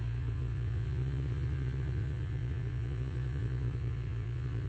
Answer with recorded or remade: remade